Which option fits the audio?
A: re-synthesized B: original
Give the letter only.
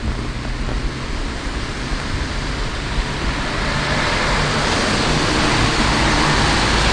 B